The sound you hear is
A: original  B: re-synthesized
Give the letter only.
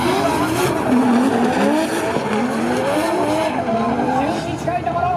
A